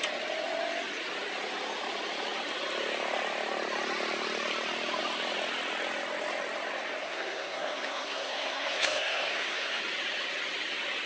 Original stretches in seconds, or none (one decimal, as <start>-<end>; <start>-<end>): 0.0-7.0; 9.8-11.1